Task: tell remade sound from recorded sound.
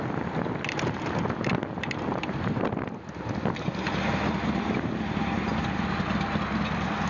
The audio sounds recorded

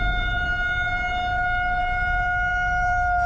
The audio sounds recorded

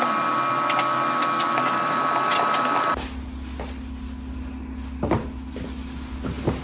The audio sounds recorded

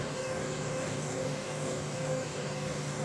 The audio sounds remade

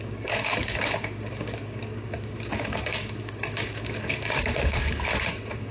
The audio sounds remade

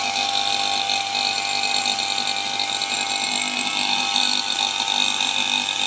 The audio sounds recorded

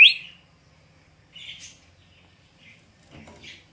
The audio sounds recorded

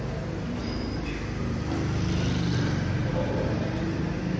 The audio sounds recorded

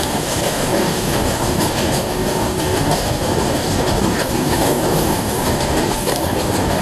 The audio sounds remade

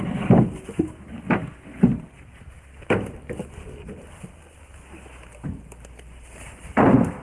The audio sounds recorded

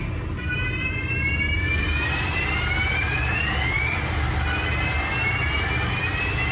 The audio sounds recorded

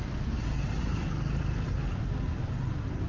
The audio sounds recorded